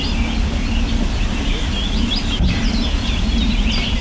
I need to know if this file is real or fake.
real